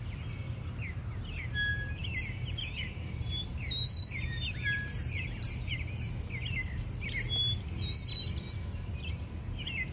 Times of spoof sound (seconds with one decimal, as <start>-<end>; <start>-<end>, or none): 1.7-6.1